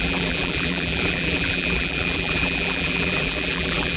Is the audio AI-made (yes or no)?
yes